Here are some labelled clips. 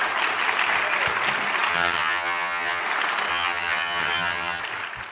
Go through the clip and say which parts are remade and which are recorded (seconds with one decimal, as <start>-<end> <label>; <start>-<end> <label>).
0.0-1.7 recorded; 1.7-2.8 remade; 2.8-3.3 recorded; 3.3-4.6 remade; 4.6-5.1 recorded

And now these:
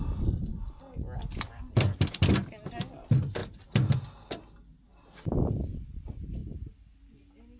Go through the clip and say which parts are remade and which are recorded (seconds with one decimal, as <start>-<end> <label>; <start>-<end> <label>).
0.0-7.6 recorded

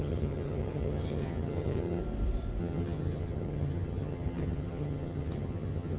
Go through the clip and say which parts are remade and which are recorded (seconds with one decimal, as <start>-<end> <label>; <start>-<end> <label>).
0.0-2.0 remade; 2.0-2.6 recorded; 2.6-6.0 remade